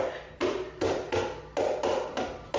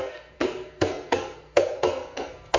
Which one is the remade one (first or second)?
second